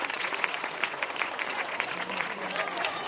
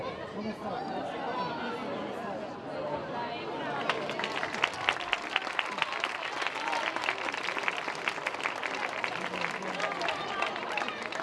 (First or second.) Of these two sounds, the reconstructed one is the first